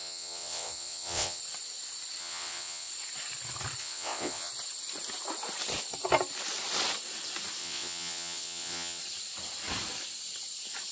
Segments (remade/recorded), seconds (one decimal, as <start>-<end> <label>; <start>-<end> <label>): 0.0-1.4 remade; 1.4-2.2 recorded; 2.2-2.9 remade; 2.9-3.8 recorded; 3.8-4.5 remade; 4.5-7.6 recorded; 7.6-9.0 remade; 9.0-10.9 recorded